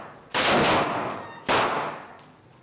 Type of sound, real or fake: real